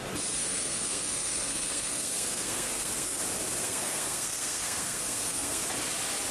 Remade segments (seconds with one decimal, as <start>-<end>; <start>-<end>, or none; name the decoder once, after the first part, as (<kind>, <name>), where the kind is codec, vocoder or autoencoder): 0.4-3.2 (codec, SNAC); 3.6-5.6